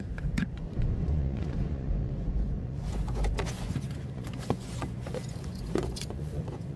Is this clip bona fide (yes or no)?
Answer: no